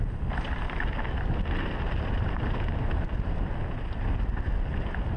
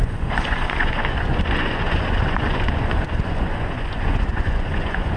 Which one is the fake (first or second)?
second